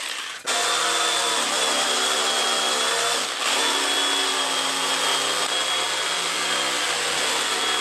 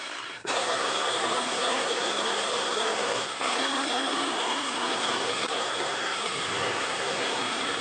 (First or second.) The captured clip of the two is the first